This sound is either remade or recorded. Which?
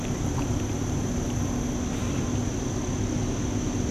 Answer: recorded